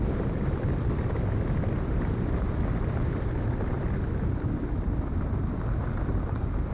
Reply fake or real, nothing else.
fake